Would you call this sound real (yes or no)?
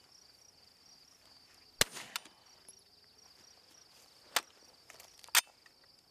yes